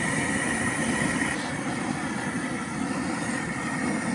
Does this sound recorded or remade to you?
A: recorded